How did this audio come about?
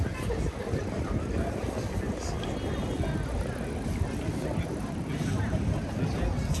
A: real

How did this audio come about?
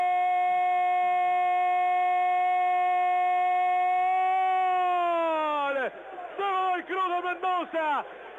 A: real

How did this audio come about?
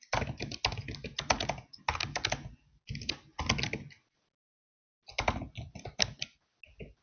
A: real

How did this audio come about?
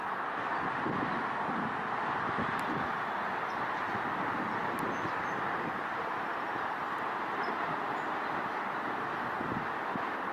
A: real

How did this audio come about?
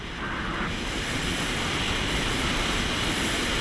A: real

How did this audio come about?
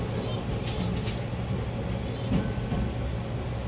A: real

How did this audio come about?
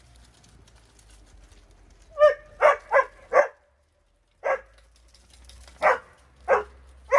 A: real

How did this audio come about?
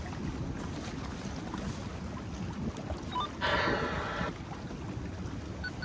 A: real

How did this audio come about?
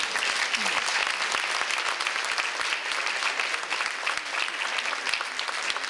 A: real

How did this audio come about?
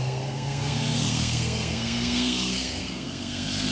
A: fake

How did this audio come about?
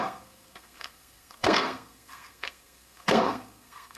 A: fake